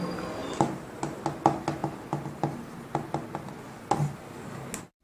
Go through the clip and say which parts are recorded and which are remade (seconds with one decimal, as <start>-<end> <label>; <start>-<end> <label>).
0.0-0.4 recorded; 0.4-1.2 remade; 1.2-5.0 recorded